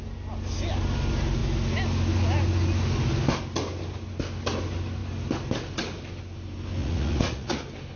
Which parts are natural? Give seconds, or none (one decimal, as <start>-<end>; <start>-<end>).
0.0-6.8; 7.6-8.0